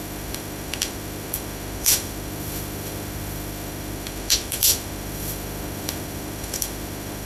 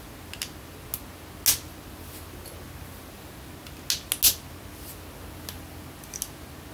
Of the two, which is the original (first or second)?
second